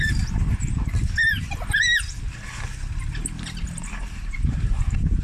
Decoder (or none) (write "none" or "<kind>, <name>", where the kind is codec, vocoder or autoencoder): none